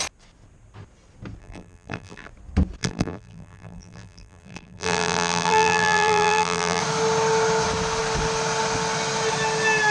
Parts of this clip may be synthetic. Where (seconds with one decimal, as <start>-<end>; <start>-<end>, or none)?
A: 1.4-2.3; 2.8-6.8